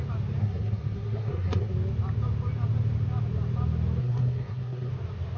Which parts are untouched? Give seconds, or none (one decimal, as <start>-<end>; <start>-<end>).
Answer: 0.0-0.4; 1.7-4.0; 4.9-5.4